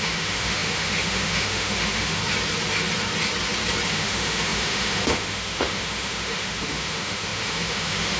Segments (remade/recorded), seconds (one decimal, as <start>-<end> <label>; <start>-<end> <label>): 0.0-2.2 remade; 2.2-3.9 recorded; 3.9-8.2 remade